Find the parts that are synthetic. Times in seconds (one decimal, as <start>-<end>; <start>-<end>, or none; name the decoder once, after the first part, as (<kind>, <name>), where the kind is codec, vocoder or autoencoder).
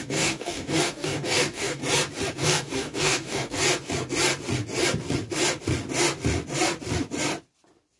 0.0-1.8 (codec, DAC); 2.3-3.6